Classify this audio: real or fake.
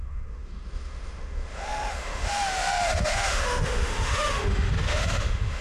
fake